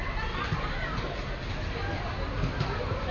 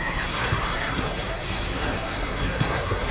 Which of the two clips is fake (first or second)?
second